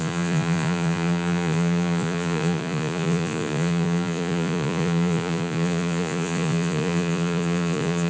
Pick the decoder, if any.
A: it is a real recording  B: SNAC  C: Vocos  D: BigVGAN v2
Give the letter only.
C